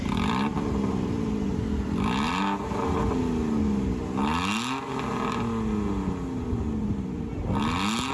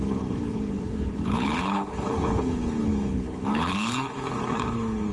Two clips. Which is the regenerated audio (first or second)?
second